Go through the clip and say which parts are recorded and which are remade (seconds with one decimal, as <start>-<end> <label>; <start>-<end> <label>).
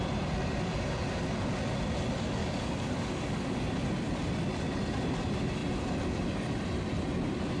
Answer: 0.0-2.4 recorded; 2.4-3.6 remade; 3.6-7.6 recorded